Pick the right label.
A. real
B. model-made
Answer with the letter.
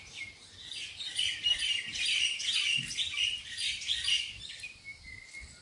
A